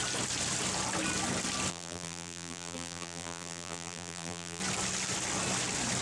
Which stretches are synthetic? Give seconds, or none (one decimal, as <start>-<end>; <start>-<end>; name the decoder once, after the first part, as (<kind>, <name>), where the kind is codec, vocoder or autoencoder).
1.7-4.6 (vocoder, BigVGAN v2)